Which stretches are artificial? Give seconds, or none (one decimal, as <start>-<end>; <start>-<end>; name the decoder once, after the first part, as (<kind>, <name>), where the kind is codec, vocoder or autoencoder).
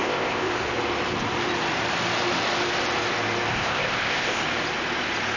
0.0-0.5 (codec, ZipCodec); 3.5-4.4